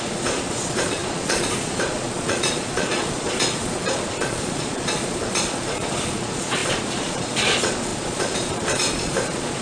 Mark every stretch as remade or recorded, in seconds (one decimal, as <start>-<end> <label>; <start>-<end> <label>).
0.0-9.6 remade